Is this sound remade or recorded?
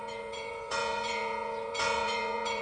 remade